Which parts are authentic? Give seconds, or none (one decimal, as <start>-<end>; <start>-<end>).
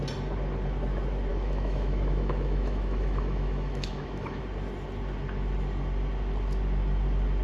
0.0-1.3; 4.4-7.4